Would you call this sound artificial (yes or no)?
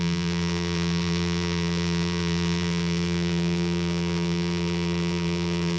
yes